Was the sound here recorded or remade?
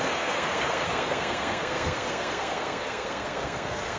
remade